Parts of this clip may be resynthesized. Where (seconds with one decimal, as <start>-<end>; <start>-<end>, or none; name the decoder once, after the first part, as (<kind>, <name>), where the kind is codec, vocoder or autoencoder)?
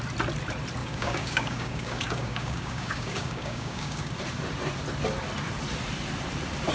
0.8-4.1 (codec, DAC)